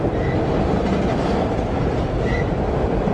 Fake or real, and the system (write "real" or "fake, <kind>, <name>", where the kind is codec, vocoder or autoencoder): real